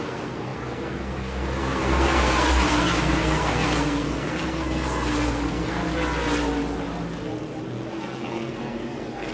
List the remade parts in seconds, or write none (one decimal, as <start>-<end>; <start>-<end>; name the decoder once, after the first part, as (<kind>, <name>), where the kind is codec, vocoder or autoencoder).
0.0-5.8 (codec, SNAC); 8.0-9.3